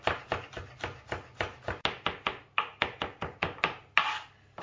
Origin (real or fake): real